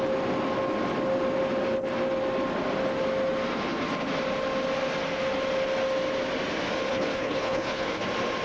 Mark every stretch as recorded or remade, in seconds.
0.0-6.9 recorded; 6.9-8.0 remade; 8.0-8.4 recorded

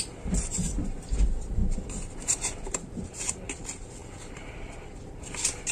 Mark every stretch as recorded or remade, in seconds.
0.0-5.7 recorded